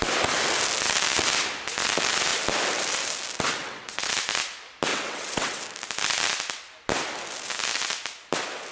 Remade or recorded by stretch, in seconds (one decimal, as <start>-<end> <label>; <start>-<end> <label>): 0.0-3.6 recorded; 3.6-4.1 remade; 4.1-4.9 recorded; 4.9-5.6 remade; 5.6-8.7 recorded